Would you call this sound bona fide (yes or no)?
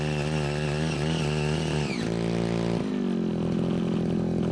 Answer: yes